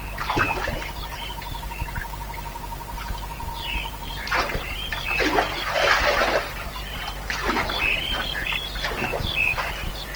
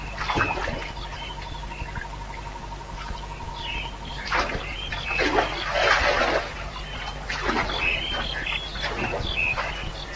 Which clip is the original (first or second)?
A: second